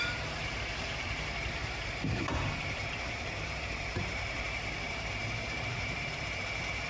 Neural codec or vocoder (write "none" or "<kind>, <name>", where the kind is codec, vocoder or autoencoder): vocoder, BigVGAN v2